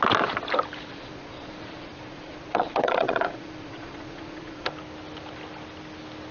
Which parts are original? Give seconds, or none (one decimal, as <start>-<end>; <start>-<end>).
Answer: 0.0-0.9; 4.7-6.3